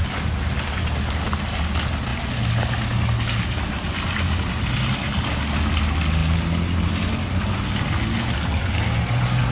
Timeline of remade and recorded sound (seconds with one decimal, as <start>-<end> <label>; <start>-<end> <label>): 0.0-9.5 recorded